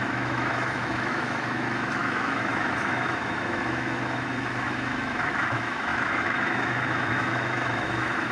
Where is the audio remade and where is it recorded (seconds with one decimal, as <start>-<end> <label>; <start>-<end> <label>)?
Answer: 0.0-8.3 remade